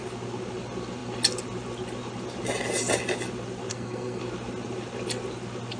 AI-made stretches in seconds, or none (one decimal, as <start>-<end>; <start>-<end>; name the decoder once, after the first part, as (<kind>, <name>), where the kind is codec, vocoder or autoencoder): 3.7-4.2 (codec, SNAC)